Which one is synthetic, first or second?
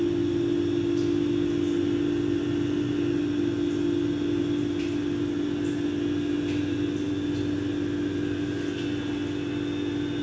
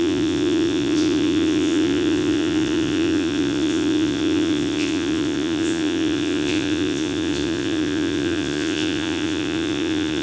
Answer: second